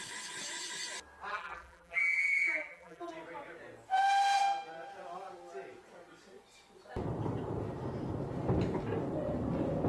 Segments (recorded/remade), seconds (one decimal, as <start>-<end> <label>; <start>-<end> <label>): 0.0-1.3 recorded; 1.3-3.1 remade; 3.1-9.9 recorded